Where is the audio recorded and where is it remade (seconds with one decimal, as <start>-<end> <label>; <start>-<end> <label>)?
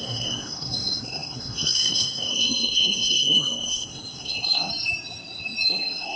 0.0-4.7 remade; 4.7-5.7 recorded; 5.7-6.2 remade